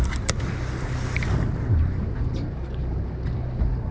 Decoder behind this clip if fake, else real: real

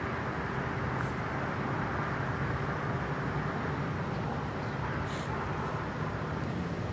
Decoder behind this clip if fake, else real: real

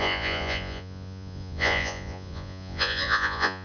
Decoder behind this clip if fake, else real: fake, vocoder, Vocos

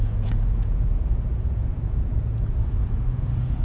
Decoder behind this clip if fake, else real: fake, vocoder, Vocos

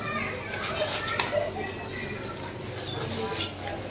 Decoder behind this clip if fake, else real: real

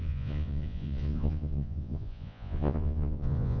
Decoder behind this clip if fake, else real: fake, vocoder, Vocos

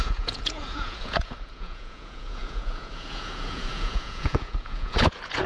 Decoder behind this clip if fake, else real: fake, vocoder, Vocos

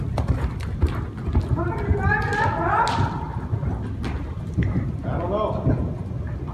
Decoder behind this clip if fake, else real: real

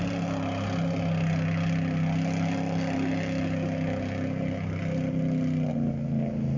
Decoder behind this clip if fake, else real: real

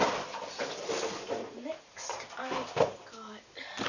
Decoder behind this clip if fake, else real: real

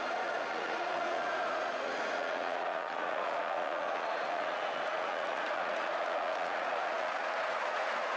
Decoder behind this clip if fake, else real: fake, vocoder, Vocos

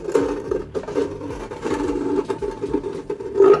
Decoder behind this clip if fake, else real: real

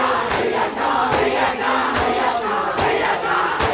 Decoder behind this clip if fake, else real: real